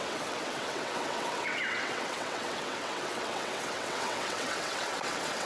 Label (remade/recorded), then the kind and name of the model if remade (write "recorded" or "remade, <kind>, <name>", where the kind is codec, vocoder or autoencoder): remade, vocoder, WaveNeXt